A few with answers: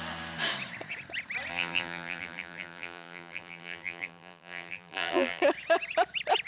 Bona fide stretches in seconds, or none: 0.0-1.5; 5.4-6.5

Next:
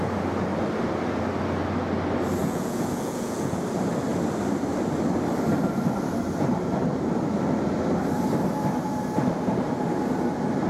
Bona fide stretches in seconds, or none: 0.0-2.4; 3.5-10.7

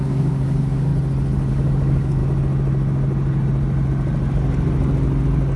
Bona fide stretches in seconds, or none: 0.9-1.5; 2.2-5.6

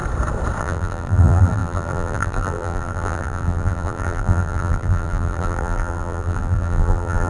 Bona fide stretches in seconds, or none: 0.0-0.6

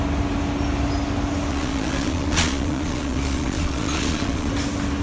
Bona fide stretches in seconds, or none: 0.0-1.5; 4.5-5.0

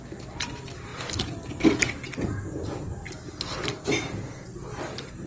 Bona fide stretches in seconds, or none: 0.0-5.3

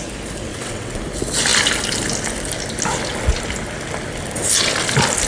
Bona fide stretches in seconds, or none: 0.0-0.5; 1.0-5.3

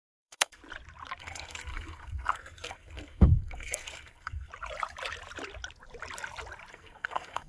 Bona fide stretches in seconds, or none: 0.6-1.2; 4.5-6.7